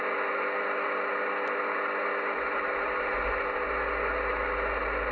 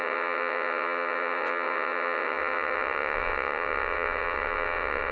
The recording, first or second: first